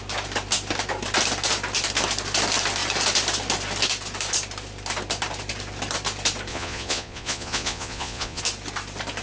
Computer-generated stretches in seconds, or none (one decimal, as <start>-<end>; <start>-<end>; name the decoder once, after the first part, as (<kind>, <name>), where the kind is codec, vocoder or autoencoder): 6.5-8.4 (vocoder, Vocos)